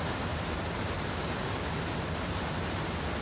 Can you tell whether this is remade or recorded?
recorded